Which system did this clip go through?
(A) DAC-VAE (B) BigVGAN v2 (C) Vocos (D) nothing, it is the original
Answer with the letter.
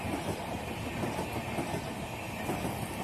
D